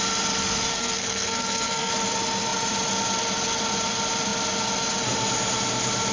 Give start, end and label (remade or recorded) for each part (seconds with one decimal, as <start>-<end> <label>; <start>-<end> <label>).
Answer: 0.0-0.7 recorded; 0.7-1.9 remade; 1.9-6.1 recorded